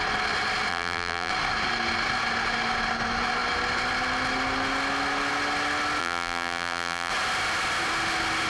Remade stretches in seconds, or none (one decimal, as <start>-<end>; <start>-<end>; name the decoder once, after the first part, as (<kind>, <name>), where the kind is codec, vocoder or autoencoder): 0.7-1.3 (vocoder, BigVGAN v2); 6.0-7.1